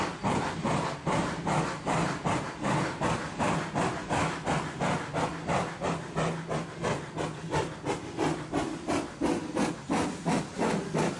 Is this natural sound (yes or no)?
yes